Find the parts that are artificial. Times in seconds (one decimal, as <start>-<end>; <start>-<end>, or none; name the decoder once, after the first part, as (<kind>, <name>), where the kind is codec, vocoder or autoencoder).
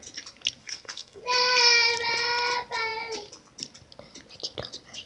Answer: 0.6-1.2 (codec, SNAC)